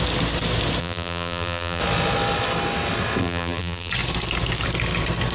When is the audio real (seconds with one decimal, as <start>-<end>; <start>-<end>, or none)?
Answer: 0.0-0.8; 1.8-3.2; 3.9-5.3